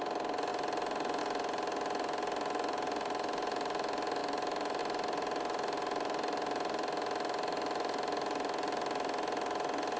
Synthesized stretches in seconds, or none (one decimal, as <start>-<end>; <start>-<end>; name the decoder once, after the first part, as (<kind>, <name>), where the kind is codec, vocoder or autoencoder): none